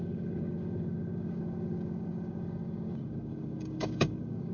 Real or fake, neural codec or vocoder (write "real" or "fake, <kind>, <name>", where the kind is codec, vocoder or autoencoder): fake, codec, DAC